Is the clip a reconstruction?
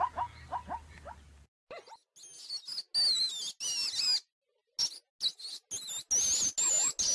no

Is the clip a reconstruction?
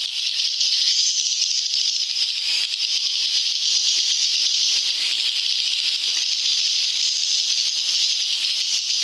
no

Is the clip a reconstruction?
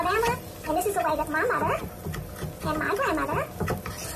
no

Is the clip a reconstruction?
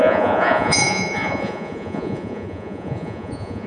yes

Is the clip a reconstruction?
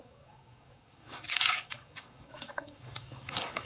yes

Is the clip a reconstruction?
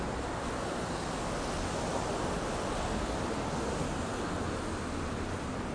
no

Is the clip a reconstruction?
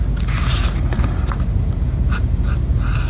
no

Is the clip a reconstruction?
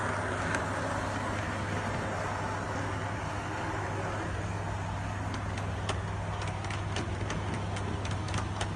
no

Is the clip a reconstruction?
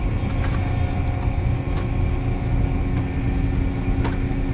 no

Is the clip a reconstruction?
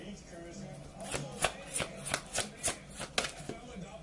no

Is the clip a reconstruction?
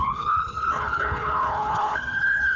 yes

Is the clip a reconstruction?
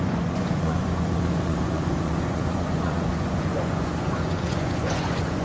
yes